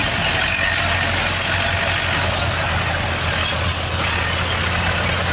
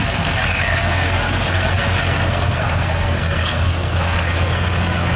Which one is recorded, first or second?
first